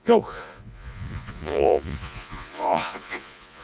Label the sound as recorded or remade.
remade